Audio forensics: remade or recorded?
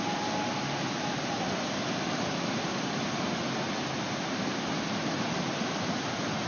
recorded